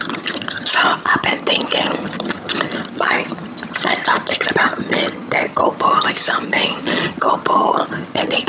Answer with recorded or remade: remade